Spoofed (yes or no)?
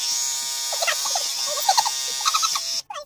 no